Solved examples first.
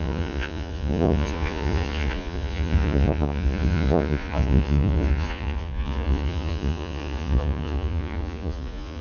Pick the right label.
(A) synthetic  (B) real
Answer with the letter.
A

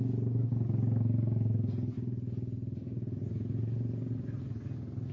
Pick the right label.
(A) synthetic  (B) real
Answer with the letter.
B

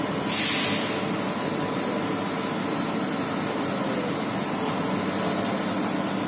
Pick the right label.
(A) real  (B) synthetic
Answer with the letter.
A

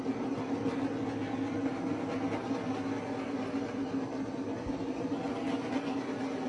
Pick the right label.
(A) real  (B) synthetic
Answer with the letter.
A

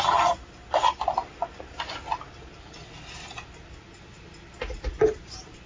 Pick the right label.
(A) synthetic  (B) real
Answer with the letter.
B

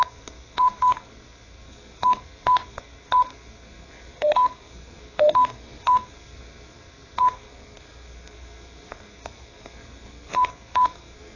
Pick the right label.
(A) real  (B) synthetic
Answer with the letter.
B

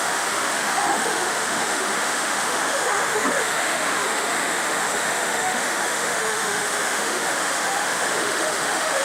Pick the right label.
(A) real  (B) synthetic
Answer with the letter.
B